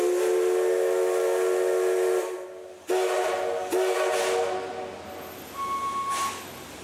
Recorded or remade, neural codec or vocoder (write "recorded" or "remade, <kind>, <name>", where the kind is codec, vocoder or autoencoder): recorded